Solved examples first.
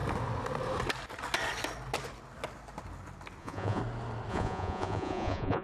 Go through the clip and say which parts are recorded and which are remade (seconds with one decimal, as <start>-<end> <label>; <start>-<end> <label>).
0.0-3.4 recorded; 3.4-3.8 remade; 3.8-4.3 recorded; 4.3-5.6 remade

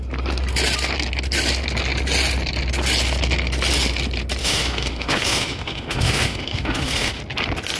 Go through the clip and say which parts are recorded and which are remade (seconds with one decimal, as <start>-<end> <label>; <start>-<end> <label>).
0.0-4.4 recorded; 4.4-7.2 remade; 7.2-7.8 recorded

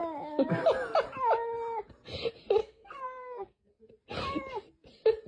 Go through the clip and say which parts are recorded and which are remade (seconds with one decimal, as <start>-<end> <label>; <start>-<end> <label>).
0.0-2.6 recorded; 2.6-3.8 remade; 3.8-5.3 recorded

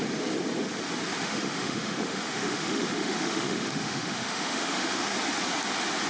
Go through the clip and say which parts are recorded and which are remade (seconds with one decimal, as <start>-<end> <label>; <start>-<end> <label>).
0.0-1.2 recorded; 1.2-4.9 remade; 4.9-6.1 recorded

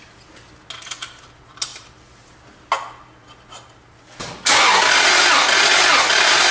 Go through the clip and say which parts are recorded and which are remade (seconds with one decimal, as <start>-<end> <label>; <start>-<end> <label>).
0.0-6.5 recorded

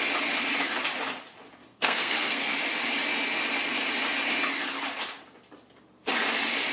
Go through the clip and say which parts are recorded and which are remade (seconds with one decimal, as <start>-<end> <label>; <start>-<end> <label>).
0.0-1.7 recorded; 1.7-2.5 remade; 2.5-6.7 recorded

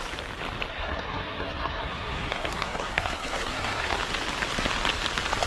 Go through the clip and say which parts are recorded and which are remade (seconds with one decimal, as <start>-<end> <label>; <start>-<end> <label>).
0.0-0.7 recorded; 0.7-4.0 remade; 4.0-5.5 recorded

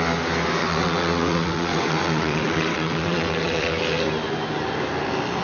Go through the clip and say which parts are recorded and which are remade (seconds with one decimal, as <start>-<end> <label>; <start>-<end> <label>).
0.0-0.6 recorded; 0.6-3.8 remade; 3.8-5.4 recorded